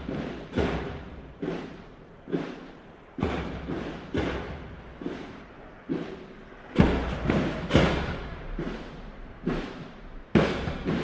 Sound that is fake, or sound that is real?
fake